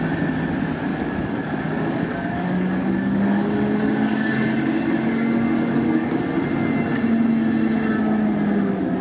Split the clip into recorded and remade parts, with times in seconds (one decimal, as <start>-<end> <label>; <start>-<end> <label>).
0.0-0.9 recorded; 0.9-6.2 remade; 6.2-9.0 recorded